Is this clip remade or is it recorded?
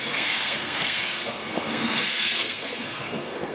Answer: remade